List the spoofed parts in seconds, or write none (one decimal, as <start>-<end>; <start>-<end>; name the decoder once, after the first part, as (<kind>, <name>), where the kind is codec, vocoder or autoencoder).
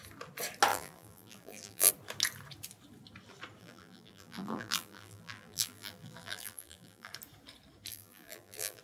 0.7-1.9 (vocoder, BigVGAN v2); 3.6-7.1; 7.9-8.8